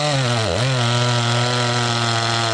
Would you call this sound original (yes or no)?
yes